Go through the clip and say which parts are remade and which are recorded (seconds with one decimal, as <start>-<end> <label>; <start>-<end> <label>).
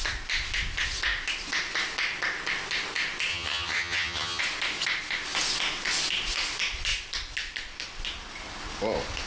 0.0-3.3 recorded; 3.3-4.4 remade; 4.4-9.3 recorded